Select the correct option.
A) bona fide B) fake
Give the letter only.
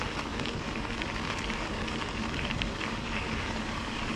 B